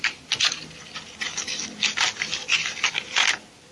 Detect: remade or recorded recorded